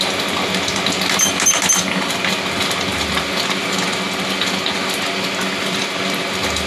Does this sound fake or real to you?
real